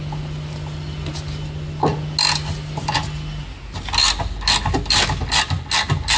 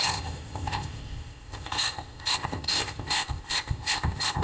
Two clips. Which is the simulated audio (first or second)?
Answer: second